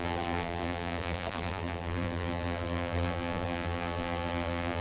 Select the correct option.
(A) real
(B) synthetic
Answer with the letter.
B